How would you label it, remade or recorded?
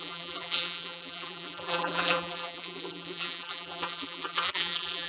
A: remade